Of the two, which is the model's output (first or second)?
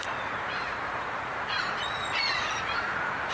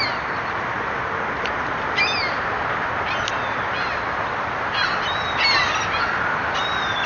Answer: first